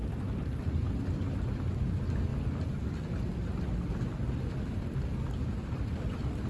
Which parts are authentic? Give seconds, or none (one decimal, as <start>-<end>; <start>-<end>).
0.0-6.5

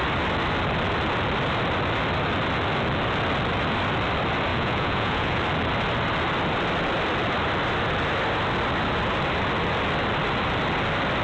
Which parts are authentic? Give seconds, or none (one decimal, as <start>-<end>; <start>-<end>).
0.0-4.5; 5.4-11.2

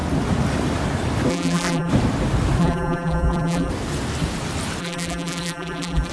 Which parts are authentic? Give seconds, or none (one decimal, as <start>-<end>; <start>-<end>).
0.0-1.3; 1.9-2.6; 3.7-4.8

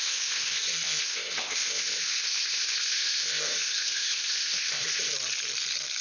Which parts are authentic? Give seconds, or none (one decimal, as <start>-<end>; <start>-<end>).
5.1-6.0

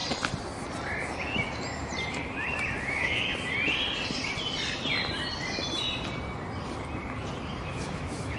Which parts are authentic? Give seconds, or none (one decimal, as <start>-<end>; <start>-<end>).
0.0-2.8; 3.3-7.8